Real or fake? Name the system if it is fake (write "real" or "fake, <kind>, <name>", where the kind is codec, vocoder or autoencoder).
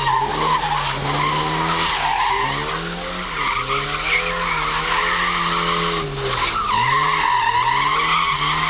real